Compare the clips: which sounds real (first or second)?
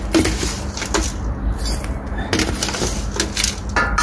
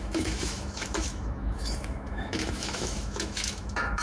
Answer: first